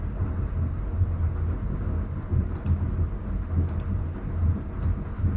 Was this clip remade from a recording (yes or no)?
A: no